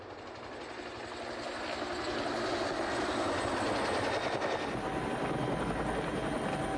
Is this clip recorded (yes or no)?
yes